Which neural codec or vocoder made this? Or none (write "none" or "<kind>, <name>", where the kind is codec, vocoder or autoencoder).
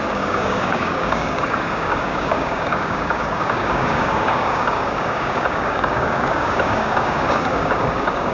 codec, DAC